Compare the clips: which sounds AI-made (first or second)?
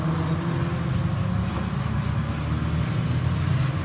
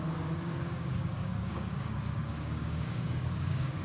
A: second